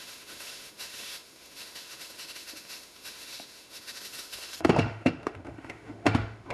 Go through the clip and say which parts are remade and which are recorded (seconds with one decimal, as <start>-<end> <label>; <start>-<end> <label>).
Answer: 0.0-6.5 remade